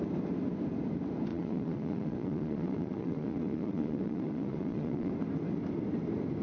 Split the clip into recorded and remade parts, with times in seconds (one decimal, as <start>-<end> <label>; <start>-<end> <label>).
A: 0.0-1.3 recorded; 1.3-5.1 remade; 5.1-6.4 recorded